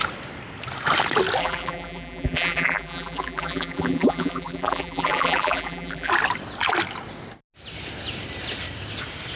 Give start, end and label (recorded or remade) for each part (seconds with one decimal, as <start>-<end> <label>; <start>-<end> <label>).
0.0-1.4 recorded; 1.4-6.1 remade; 6.1-9.4 recorded